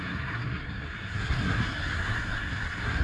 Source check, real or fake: fake